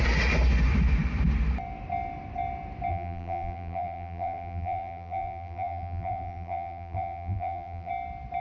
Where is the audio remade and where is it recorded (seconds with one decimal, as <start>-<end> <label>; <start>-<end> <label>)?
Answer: 0.0-2.9 recorded; 2.9-7.9 remade; 7.9-8.4 recorded